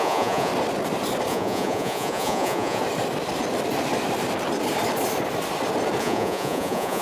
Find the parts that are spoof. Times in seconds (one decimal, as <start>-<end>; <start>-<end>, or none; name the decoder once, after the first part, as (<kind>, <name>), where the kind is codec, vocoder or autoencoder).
0.0-0.5 (vocoder, Vocos); 1.3-2.8; 6.0-7.0